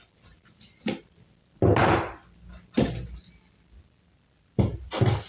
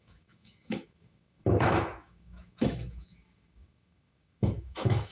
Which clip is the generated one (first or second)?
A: second